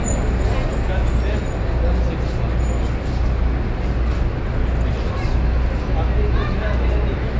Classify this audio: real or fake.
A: real